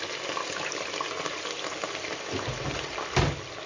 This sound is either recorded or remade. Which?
recorded